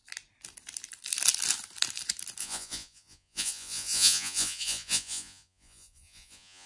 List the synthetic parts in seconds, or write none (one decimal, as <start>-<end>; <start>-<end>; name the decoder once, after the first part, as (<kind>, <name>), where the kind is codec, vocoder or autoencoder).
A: 2.4-6.7 (vocoder, Vocos)

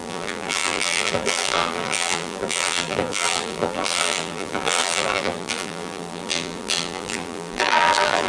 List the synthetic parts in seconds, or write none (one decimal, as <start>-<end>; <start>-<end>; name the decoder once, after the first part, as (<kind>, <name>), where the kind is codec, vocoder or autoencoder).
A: 0.0-8.3 (vocoder, BigVGAN v2)